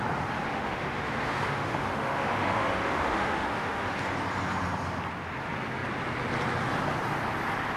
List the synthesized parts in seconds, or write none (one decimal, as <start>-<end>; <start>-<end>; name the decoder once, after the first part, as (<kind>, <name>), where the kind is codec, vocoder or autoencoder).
0.5-3.9 (autoencoder, DAC-VAE)